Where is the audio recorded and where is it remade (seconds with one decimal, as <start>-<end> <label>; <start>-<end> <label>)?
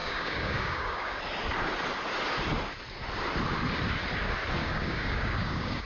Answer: 0.0-1.2 remade; 1.2-4.6 recorded; 4.6-5.8 remade